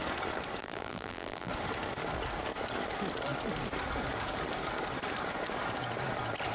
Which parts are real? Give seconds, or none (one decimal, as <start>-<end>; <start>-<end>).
0.0-0.6; 1.5-6.5

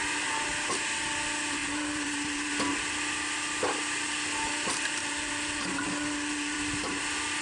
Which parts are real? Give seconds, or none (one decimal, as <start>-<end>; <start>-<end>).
0.0-1.6; 2.5-5.0; 7.0-7.4

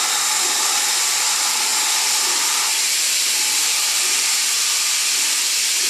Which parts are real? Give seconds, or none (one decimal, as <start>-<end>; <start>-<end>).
0.0-3.6; 4.7-5.9